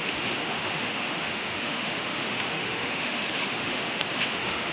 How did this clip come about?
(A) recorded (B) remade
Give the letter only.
B